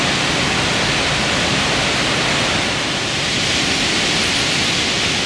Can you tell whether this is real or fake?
real